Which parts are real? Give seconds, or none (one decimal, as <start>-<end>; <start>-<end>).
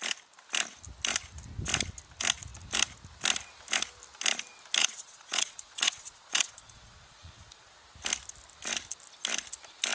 0.0-4.8; 7.7-9.9